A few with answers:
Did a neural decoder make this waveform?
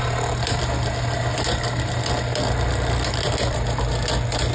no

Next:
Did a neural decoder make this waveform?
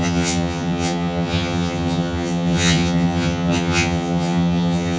yes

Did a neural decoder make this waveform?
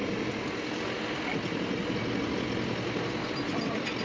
no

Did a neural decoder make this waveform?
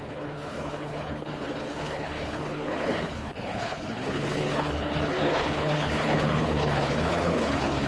yes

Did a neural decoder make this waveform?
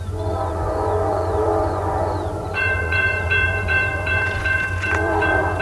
yes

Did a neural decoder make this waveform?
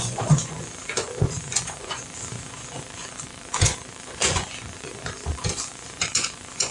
yes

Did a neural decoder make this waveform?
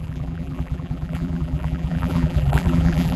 yes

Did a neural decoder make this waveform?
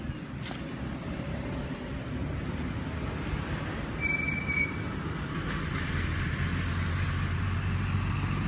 no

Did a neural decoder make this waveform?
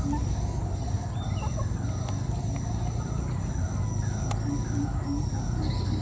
no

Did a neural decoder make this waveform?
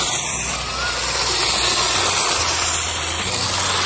no